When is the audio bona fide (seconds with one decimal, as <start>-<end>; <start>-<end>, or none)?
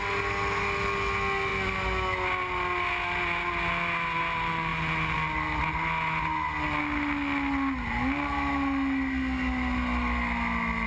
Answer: 0.0-10.9